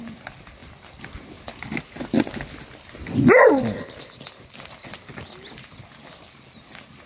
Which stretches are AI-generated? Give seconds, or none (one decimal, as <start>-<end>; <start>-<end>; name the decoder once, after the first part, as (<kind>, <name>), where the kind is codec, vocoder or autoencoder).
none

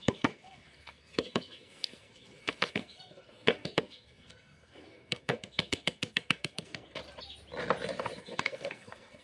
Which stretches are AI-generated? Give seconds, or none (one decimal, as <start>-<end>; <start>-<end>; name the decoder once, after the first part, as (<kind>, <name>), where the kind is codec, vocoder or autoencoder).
0.0-7.0 (codec, SNAC); 8.2-9.2

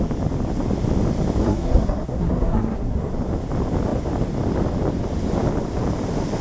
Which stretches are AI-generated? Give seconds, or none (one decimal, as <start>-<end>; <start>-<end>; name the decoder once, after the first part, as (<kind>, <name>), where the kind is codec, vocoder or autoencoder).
1.4-3.1 (codec, SNAC)

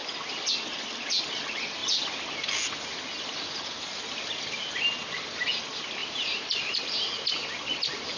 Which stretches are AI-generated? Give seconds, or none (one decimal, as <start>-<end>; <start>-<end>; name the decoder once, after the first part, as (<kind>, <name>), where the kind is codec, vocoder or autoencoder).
6.0-7.1 (vocoder, BigVGAN v2)

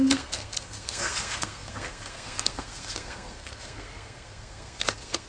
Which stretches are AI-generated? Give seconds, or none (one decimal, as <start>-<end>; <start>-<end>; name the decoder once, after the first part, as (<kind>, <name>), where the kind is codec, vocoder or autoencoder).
0.0-5.3 (codec, SNAC)